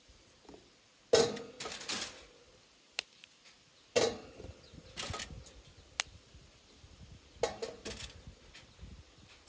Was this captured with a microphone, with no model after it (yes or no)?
yes